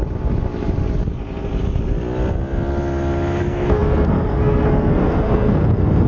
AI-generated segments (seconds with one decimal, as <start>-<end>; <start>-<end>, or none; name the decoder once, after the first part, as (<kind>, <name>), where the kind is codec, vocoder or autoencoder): 3.4-6.1 (codec, SNAC)